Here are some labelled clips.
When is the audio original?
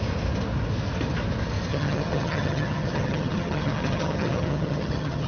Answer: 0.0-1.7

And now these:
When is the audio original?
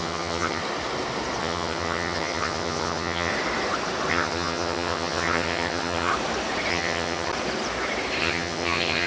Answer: 0.6-1.4; 3.3-4.1; 6.1-6.7; 7.3-8.2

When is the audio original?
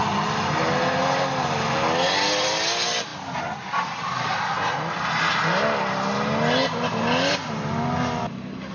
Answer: 0.0-8.7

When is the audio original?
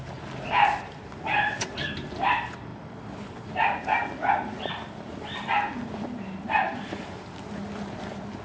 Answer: 0.0-8.4